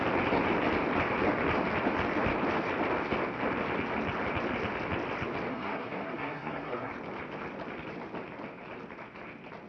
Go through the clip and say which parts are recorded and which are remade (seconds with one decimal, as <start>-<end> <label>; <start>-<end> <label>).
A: 0.0-5.5 recorded; 5.5-6.9 remade; 6.9-9.7 recorded